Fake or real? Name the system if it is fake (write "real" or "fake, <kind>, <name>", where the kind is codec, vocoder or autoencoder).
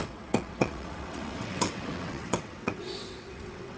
fake, vocoder, WaveNeXt